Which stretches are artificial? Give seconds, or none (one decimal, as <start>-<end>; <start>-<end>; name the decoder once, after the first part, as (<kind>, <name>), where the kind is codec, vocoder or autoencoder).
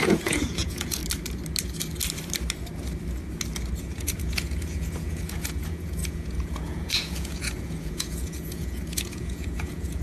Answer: 0.0-1.0 (vocoder, Vocos); 3.8-10.0